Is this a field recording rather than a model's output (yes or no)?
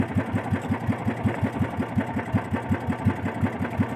yes